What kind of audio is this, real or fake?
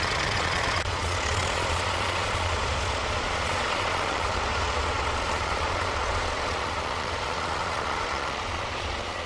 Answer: fake